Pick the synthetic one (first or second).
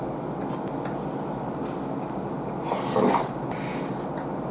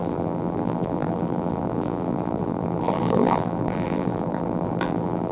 second